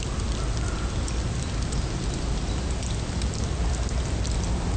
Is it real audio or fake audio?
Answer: real